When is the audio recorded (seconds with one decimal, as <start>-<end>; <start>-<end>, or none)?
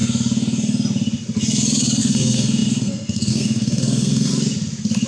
0.0-2.0; 4.3-5.1